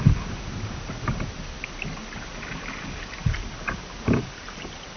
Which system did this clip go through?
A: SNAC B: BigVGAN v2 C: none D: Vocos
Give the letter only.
C